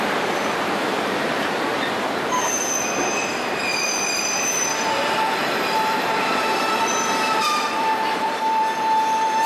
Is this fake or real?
fake